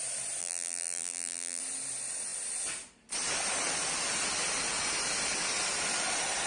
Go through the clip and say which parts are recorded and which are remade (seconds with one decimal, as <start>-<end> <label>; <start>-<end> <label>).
0.0-0.4 recorded; 0.4-1.6 remade; 1.6-6.5 recorded